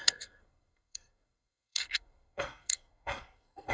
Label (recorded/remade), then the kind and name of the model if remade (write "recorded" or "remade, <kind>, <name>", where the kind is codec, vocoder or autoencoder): remade, codec, SNAC